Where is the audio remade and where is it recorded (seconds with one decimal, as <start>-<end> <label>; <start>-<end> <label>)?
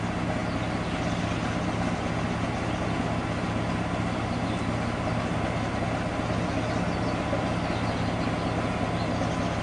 0.0-9.6 recorded